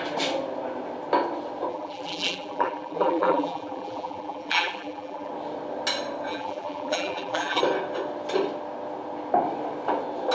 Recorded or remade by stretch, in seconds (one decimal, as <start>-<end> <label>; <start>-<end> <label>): 0.0-1.7 recorded; 1.7-5.3 remade; 5.3-6.3 recorded; 6.3-7.6 remade; 7.6-10.3 recorded